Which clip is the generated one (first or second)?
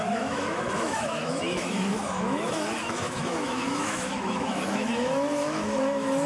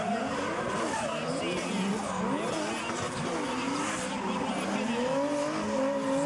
first